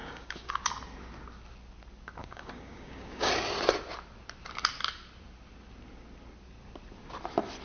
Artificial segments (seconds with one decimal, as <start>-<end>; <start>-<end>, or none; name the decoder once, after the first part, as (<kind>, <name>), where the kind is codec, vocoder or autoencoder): 0.0-0.7 (codec, DAC); 2.2-3.3